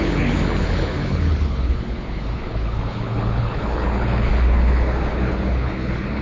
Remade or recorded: remade